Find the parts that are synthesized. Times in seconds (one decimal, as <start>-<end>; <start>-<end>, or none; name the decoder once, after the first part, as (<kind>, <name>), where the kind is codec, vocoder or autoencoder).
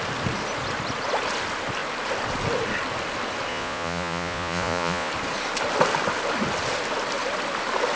3.5-5.1 (vocoder, Vocos)